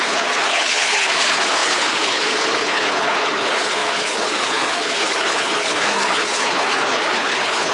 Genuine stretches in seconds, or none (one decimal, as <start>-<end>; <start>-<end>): none